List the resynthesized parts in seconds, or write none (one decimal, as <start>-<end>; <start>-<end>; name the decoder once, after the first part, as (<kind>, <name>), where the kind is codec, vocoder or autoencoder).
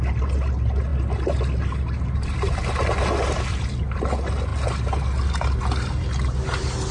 none